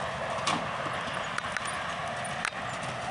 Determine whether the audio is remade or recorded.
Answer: recorded